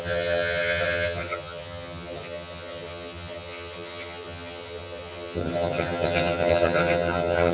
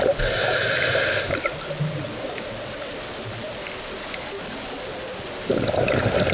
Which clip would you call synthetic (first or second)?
first